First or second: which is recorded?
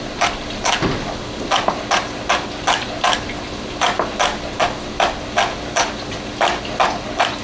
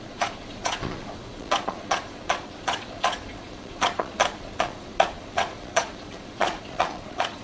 first